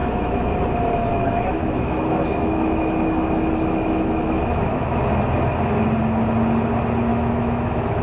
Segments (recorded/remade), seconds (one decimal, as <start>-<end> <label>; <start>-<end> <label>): 0.0-0.5 remade; 0.5-1.1 recorded; 1.1-5.0 remade; 5.0-7.1 recorded; 7.1-8.0 remade